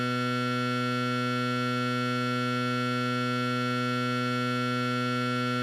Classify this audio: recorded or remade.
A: recorded